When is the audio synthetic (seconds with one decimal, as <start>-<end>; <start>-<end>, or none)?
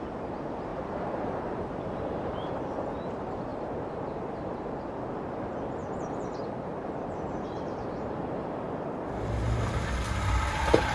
0.7-2.7; 3.5-4.5; 5.8-8.8